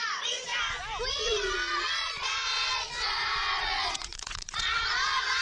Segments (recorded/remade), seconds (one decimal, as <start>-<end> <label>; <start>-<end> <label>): 0.0-0.5 remade; 0.5-1.1 recorded; 1.1-5.4 remade